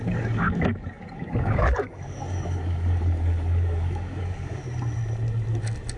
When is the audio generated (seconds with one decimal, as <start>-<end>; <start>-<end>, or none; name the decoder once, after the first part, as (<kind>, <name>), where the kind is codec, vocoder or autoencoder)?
0.0-4.6 (codec, DAC)